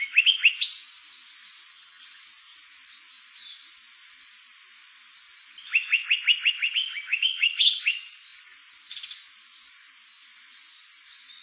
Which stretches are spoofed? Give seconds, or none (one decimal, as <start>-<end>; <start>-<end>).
1.7-2.2; 7.1-7.8